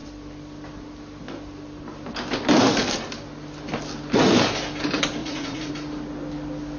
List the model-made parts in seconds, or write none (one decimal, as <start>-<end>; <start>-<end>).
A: 5.2-5.7